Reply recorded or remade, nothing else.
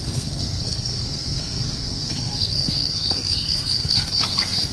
remade